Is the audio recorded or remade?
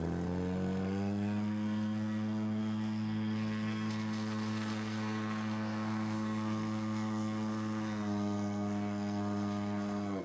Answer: remade